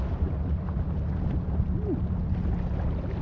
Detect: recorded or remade recorded